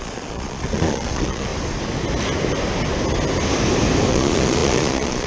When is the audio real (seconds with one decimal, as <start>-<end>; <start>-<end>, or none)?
1.5-4.1